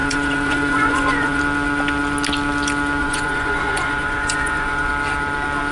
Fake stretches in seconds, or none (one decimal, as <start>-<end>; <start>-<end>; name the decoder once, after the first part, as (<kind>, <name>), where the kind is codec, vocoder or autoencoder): 0.0-1.4 (vocoder, Vocos); 3.0-4.9